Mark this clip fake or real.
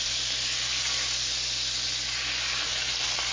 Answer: real